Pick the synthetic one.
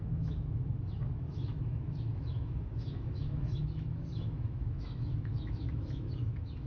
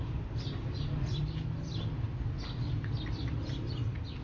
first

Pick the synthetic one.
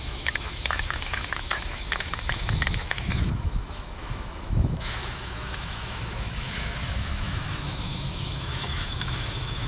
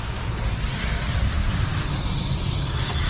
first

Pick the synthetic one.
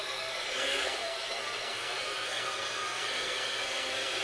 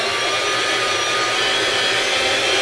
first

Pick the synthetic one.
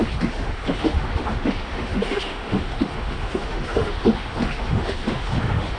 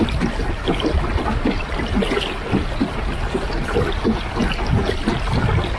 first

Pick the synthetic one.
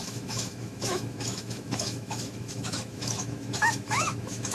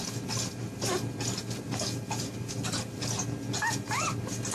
first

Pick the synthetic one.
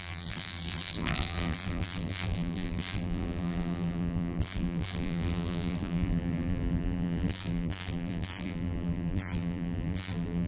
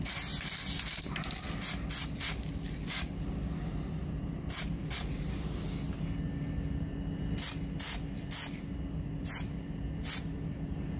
first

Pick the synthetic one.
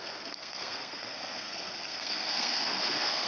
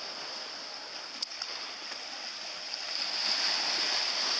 first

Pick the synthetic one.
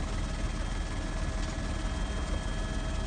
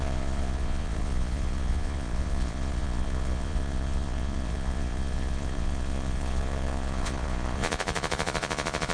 second